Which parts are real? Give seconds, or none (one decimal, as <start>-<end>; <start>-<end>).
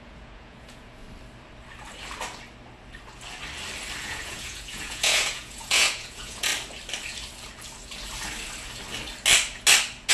1.0-4.0; 6.5-10.1